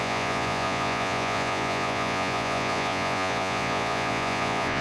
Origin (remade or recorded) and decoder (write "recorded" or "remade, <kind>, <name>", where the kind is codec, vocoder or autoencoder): remade, vocoder, Vocos